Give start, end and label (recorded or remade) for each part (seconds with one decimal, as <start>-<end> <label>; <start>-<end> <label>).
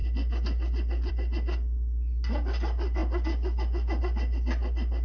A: 0.0-5.0 recorded